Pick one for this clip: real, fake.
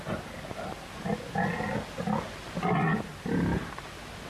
real